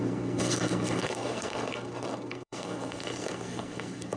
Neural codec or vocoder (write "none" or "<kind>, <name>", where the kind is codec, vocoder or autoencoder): codec, SNAC